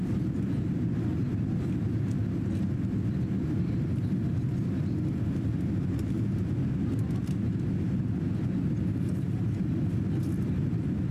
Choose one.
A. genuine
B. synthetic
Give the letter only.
A